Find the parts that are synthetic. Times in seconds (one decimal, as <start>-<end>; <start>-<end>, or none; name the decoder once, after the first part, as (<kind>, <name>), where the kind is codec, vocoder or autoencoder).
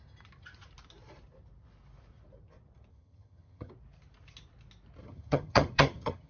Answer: 2.9-3.7 (vocoder, HiFi-GAN); 5.0-6.3